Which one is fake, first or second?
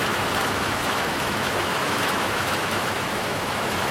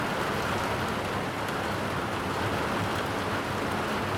first